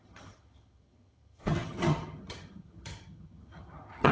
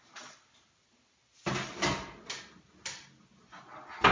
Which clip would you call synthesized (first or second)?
first